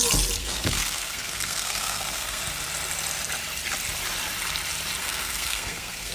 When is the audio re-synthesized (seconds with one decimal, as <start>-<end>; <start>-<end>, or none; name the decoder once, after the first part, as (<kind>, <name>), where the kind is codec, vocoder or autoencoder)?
0.4-2.4 (codec, SNAC); 5.0-6.1